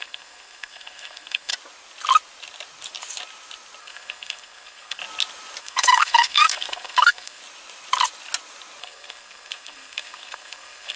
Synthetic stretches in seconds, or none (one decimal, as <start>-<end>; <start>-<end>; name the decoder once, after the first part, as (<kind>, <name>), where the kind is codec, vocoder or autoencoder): 0.0-1.5 (codec, SNAC); 3.8-5.0; 5.6-7.4; 8.8-11.0